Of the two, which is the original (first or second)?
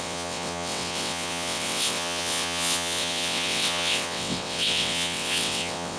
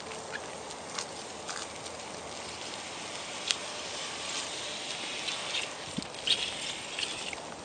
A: second